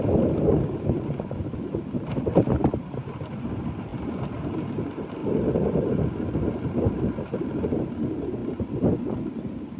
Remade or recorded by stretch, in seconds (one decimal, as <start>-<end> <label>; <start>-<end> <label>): 0.0-9.8 recorded